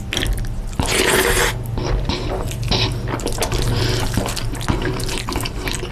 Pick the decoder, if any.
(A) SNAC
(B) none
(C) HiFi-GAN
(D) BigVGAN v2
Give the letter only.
B